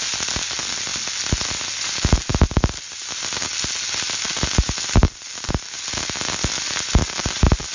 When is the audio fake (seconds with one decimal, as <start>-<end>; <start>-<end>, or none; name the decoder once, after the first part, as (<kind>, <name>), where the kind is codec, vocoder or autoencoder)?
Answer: none